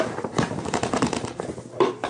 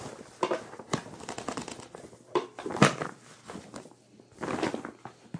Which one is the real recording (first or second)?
second